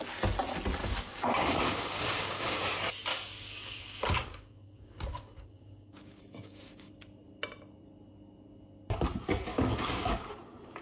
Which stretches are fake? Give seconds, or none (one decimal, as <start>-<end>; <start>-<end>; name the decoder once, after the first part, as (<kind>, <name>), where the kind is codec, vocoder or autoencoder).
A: 0.8-2.6 (codec, DAC); 3.1-6.9; 9.5-10.3